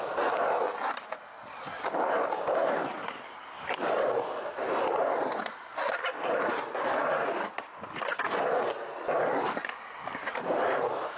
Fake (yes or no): no